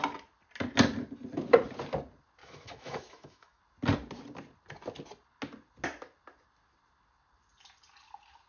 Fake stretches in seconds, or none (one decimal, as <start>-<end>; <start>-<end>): 2.4-3.6